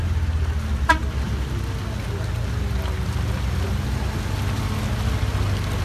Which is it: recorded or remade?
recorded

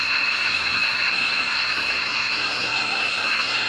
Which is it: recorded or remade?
remade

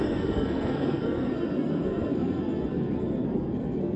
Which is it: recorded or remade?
remade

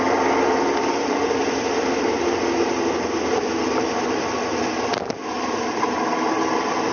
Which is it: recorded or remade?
recorded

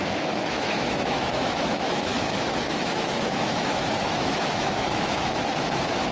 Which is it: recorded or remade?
remade